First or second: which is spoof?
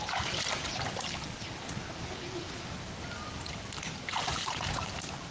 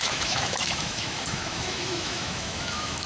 second